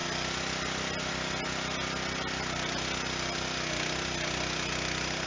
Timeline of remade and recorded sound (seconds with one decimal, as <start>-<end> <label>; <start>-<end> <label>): 0.0-5.3 recorded

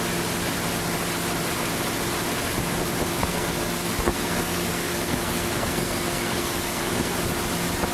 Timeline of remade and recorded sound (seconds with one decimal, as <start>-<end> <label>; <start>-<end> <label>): 0.0-3.1 recorded; 3.1-7.1 remade; 7.1-7.9 recorded